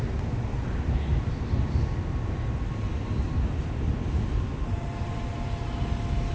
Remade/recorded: recorded